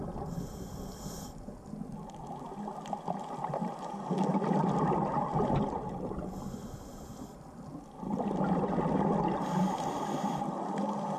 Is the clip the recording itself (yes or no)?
yes